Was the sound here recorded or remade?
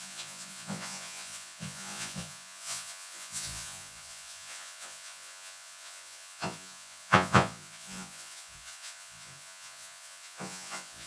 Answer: remade